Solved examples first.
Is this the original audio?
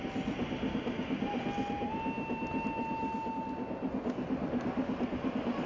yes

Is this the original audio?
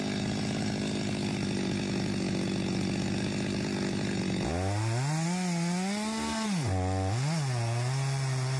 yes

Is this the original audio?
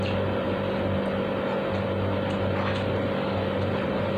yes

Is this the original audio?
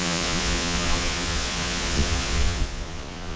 no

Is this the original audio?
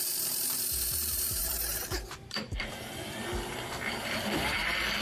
no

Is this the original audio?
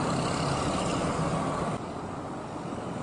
yes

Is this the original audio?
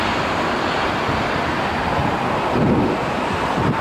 yes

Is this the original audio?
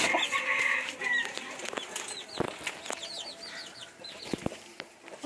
yes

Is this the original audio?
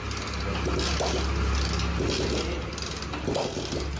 yes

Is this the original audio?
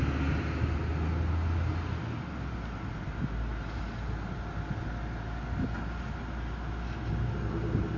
yes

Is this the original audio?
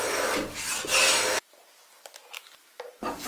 yes